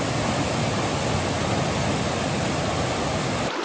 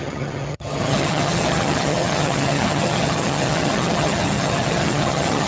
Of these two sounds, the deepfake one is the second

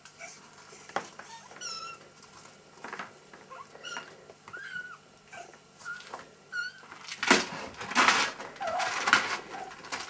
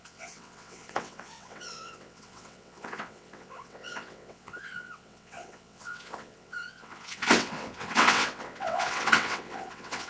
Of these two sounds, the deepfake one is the second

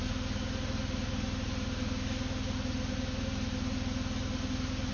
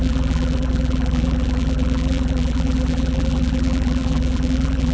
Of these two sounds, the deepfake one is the second